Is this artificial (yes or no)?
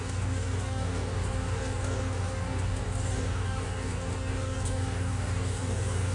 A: yes